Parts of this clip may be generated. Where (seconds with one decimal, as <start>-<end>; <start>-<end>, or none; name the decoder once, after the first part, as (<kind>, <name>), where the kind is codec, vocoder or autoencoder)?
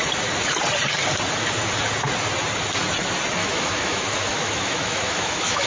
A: 3.4-5.7 (autoencoder, DAC-VAE)